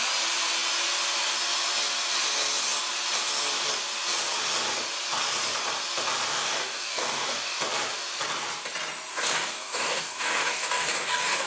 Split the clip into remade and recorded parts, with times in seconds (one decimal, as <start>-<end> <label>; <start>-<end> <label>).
0.0-6.3 recorded; 6.3-7.6 remade; 7.6-9.1 recorded; 9.1-11.5 remade